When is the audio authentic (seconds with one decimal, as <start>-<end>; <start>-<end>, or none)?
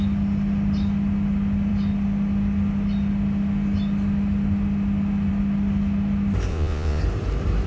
0.0-6.5; 7.0-7.7